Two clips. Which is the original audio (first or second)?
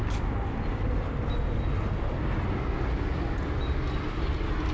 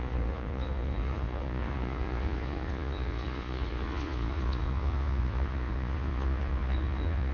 first